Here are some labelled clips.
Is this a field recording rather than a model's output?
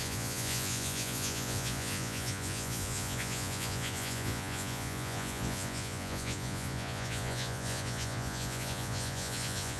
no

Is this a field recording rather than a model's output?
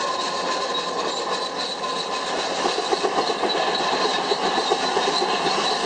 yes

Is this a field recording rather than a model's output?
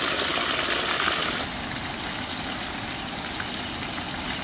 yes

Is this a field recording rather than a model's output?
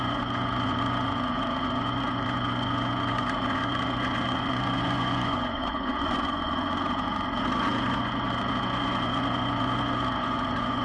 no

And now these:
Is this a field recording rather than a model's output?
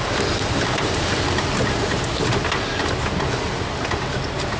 yes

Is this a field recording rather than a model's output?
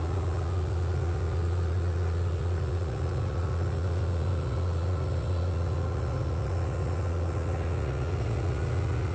no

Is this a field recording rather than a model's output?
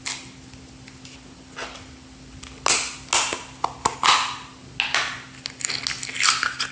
yes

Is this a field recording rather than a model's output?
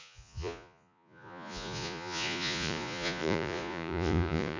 no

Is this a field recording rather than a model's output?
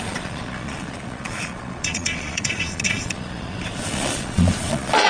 no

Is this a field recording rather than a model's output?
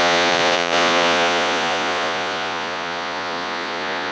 no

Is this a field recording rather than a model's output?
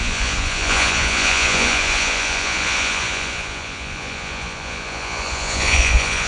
no